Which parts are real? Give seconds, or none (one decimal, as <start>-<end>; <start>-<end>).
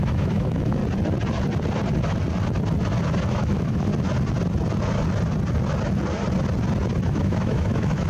0.8-3.3; 3.9-7.1